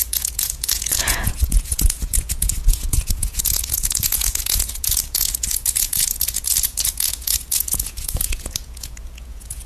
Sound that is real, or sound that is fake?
fake